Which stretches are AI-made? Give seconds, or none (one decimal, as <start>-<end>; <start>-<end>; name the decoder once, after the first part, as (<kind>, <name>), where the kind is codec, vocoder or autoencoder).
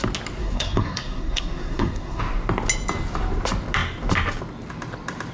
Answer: 0.4-2.2 (codec, SNAC)